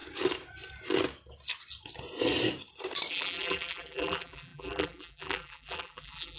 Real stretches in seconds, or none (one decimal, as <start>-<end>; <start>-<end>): 0.0-3.1